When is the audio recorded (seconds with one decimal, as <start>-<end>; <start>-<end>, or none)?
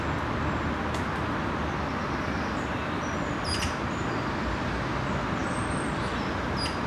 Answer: 0.0-2.8; 5.0-6.9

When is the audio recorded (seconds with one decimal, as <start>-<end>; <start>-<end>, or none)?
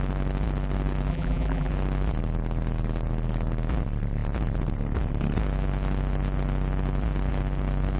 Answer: 0.0-1.1; 1.7-8.0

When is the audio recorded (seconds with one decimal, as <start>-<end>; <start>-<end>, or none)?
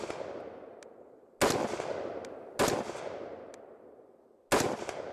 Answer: 0.0-5.1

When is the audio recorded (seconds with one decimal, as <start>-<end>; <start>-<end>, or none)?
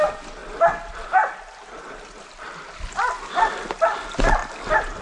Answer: 0.0-5.0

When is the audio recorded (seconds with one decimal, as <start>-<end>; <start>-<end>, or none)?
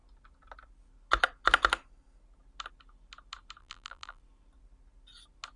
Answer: 0.0-3.6; 4.2-5.6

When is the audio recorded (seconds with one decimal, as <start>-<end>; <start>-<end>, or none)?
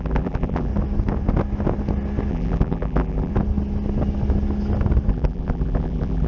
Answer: 0.7-2.3; 3.3-5.1